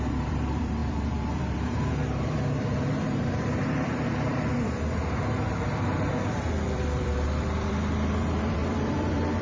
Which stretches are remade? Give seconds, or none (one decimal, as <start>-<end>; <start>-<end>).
0.0-9.4